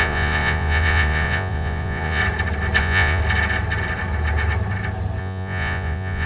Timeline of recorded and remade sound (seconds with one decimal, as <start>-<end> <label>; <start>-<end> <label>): 0.0-2.2 remade; 2.2-2.8 recorded; 2.8-3.2 remade; 3.2-5.2 recorded; 5.2-6.3 remade